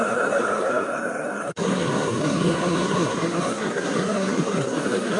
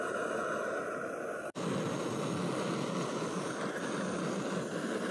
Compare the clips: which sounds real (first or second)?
second